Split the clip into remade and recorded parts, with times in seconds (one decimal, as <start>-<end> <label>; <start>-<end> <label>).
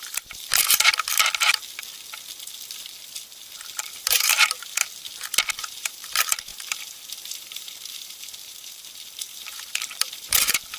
0.0-0.5 remade; 0.5-4.0 recorded; 4.0-4.8 remade; 4.8-5.5 recorded; 5.5-10.8 remade